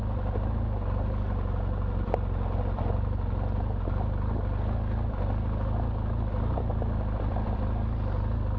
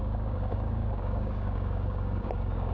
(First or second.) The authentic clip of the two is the first